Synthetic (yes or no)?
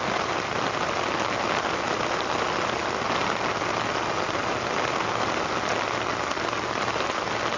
no